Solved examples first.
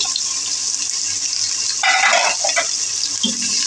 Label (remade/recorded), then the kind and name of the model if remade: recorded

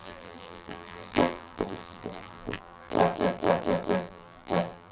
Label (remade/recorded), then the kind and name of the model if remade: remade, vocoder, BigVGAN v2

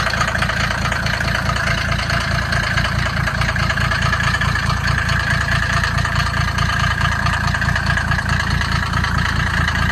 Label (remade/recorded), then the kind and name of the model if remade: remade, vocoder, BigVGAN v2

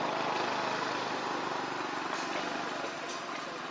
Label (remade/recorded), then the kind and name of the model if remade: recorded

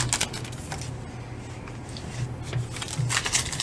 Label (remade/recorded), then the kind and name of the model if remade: recorded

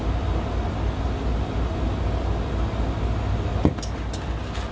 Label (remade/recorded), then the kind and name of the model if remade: recorded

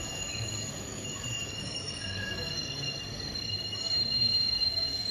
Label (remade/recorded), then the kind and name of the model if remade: remade, codec, DAC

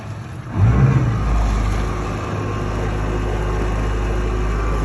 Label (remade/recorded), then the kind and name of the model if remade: recorded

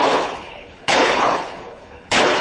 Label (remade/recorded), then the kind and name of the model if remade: remade, codec, HILCodec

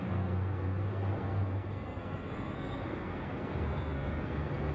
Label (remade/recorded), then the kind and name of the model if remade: remade, codec, SNAC